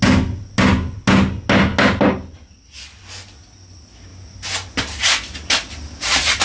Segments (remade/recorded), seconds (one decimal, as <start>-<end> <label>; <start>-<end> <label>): 0.0-6.4 recorded

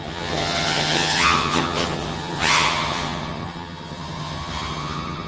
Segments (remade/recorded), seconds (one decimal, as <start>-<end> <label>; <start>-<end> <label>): 0.0-5.3 remade

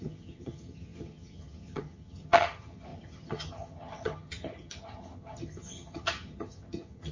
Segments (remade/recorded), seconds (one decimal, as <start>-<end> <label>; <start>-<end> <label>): 0.0-7.1 remade

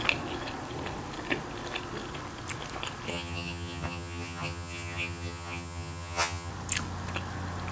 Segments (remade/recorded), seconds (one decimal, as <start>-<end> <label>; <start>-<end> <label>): 0.0-3.1 recorded; 3.1-6.5 remade; 6.5-7.7 recorded

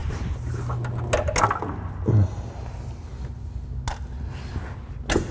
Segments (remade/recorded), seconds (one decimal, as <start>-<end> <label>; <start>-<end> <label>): 0.0-5.3 recorded

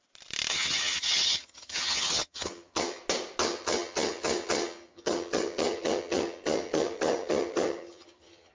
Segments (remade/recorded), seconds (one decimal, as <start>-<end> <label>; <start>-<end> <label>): 0.0-0.5 recorded; 0.5-3.0 remade; 3.0-3.4 recorded; 3.4-8.5 remade